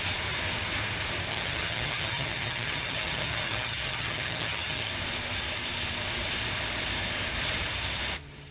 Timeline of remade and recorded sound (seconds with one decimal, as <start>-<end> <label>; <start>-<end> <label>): 0.0-1.3 recorded; 1.3-4.9 remade; 4.9-8.5 recorded